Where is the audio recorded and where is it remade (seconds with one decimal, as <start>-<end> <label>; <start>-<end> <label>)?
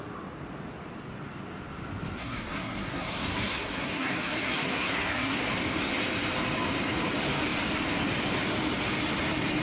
0.0-2.2 recorded; 2.2-5.5 remade; 5.5-9.6 recorded